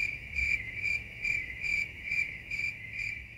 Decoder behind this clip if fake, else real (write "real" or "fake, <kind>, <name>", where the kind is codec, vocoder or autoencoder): fake, autoencoder, DAC-VAE